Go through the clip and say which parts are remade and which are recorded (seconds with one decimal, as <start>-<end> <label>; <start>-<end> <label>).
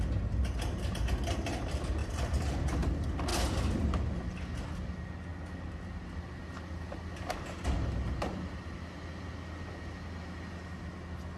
0.0-2.0 recorded; 2.0-2.5 remade; 2.5-11.4 recorded